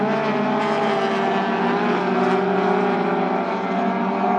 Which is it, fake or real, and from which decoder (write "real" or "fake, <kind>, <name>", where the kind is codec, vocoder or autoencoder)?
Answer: real